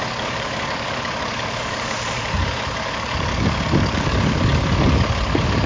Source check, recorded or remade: remade